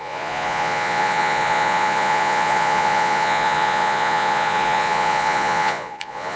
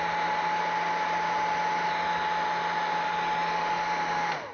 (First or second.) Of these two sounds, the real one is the second